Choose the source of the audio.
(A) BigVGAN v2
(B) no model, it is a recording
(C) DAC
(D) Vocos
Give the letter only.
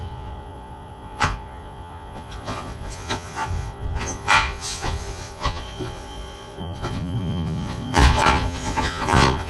D